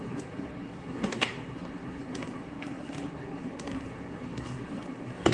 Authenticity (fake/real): fake